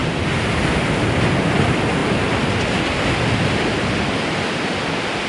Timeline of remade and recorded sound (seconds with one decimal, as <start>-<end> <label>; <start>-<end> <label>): 0.0-5.3 recorded